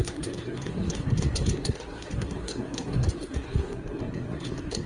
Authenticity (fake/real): fake